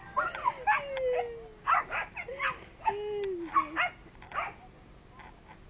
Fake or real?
real